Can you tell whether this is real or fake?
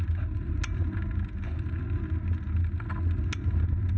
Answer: real